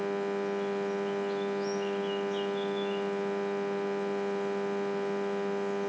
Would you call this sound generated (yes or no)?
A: no